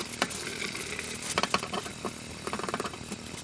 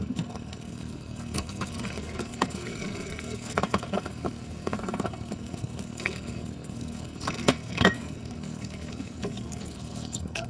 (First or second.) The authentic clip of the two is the first